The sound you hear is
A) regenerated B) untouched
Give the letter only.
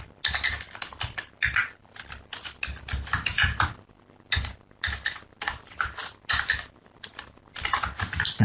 B